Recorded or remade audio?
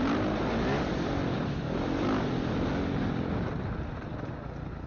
recorded